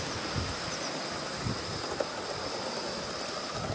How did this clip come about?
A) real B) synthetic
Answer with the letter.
A